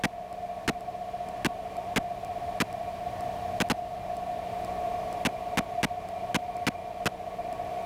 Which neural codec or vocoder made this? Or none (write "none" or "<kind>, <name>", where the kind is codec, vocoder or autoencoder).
none